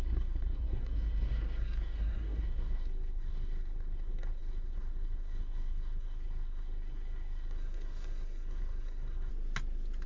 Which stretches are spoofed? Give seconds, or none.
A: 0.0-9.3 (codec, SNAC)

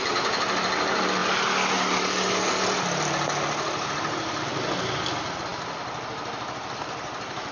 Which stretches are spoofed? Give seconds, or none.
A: none

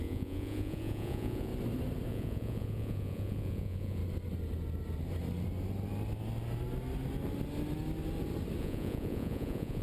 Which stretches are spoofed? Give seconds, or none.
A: 0.0-1.5 (vocoder, Vocos); 2.1-4.0; 8.6-9.8

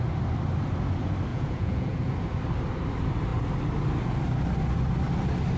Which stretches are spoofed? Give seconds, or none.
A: 1.3-2.1 (vocoder, Vocos)